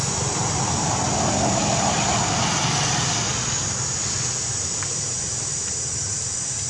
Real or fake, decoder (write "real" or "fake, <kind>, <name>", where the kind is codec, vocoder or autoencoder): real